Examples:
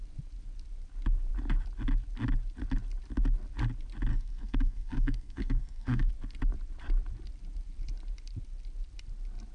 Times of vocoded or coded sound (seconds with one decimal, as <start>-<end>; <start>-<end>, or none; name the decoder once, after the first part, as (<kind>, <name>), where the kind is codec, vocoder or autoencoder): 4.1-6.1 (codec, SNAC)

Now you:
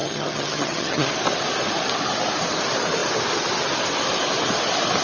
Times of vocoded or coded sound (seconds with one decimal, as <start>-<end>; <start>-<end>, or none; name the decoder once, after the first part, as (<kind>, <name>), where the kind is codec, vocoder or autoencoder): 0.0-1.1 (vocoder, HiFi-GAN)

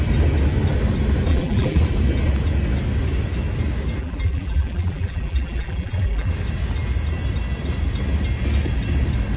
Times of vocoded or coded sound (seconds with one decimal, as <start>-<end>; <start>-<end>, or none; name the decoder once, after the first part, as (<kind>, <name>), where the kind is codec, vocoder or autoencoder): 1.3-1.8 (vocoder, BigVGAN v2); 4.0-6.3

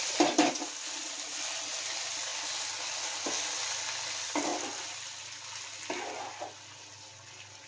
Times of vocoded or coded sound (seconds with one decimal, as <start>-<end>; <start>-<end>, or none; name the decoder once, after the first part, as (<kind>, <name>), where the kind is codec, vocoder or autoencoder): none

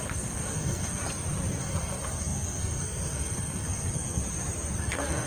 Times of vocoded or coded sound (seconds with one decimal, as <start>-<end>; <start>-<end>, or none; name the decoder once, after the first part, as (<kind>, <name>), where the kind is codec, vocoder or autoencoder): 0.0-1.0 (codec, SNAC); 1.6-4.2; 4.8-5.3

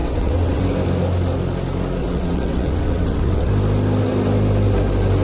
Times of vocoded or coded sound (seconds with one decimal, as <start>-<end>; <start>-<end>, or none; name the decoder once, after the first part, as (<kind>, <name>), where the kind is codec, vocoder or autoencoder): 0.0-0.6 (vocoder, WaveNeXt); 2.0-3.5